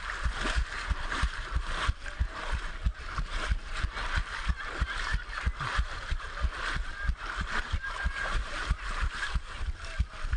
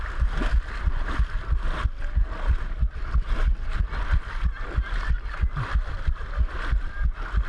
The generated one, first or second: first